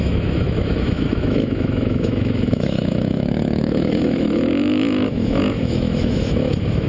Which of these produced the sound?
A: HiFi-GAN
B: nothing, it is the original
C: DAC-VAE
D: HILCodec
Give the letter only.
C